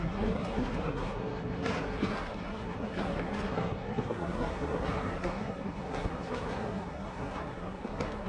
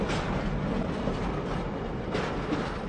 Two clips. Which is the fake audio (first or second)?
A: first